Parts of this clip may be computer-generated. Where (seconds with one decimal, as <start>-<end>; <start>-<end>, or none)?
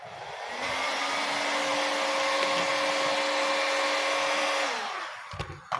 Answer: none